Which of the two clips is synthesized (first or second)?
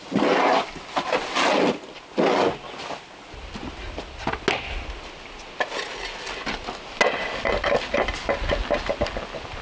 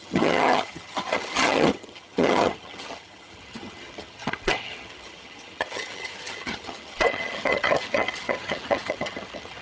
second